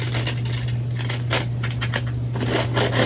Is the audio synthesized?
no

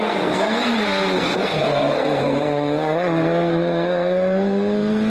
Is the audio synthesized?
yes